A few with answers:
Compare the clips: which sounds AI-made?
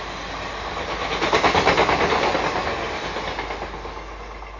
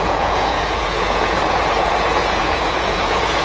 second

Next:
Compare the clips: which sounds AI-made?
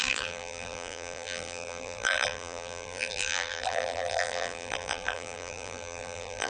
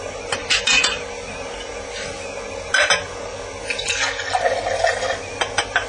first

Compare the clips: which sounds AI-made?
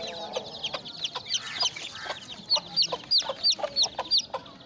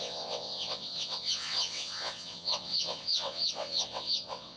second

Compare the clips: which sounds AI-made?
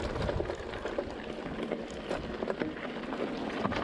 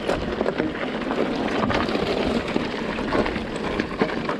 second